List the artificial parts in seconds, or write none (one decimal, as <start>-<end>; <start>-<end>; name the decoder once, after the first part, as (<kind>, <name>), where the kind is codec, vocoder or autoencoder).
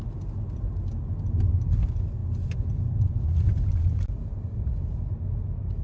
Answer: 3.5-5.8 (vocoder, BigVGAN v2)